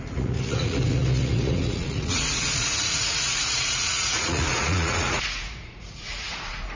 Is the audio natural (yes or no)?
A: no